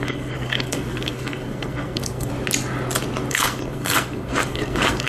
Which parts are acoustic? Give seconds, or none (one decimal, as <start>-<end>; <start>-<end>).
2.3-3.3